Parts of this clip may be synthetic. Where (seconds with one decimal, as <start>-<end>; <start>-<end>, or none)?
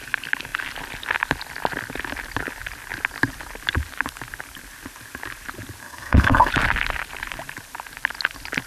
5.8-6.5